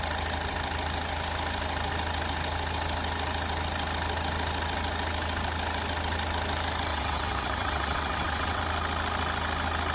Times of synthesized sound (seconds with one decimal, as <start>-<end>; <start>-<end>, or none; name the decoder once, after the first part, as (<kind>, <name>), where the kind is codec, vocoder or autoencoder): 6.9-8.6 (vocoder, WaveNeXt)